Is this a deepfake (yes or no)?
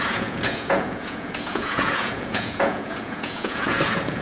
yes